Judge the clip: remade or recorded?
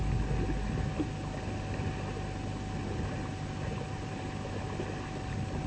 recorded